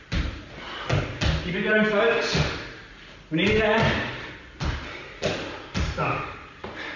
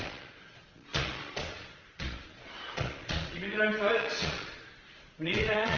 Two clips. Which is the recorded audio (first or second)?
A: first